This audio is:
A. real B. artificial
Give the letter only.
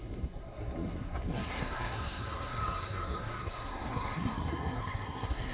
B